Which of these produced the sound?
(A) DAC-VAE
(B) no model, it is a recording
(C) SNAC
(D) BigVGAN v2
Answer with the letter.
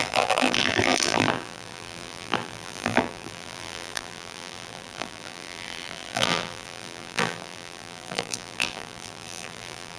D